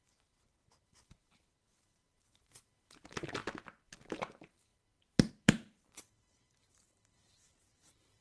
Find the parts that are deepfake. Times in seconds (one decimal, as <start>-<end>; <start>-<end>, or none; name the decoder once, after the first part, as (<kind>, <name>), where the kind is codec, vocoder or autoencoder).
0.0-3.4 (vocoder, BigVGAN v2); 4.0-4.7; 5.3-8.2